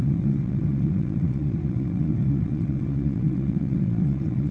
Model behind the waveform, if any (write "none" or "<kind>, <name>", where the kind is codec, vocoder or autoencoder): vocoder, WaveNeXt